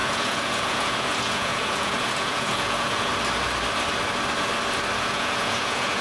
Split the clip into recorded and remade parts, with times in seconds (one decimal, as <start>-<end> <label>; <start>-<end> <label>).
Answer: 0.0-3.1 remade; 3.1-5.0 recorded; 5.0-6.0 remade